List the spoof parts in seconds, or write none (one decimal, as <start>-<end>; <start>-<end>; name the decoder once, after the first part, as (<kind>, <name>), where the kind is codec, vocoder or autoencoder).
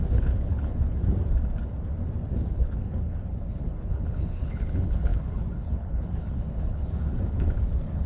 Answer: 0.0-1.0 (codec, HILCodec); 2.5-8.1